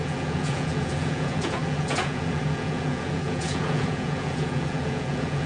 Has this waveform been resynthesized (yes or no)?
yes